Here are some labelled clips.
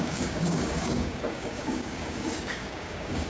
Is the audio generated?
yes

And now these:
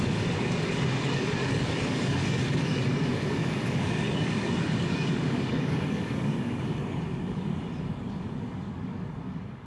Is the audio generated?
yes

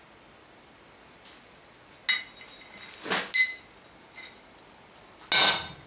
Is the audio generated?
no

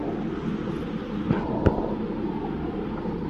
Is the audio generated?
no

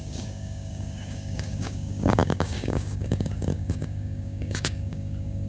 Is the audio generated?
yes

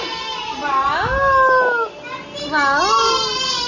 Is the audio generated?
no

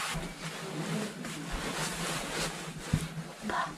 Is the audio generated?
no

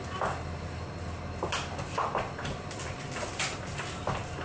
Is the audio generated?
no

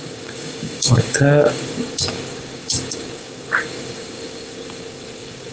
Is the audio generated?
yes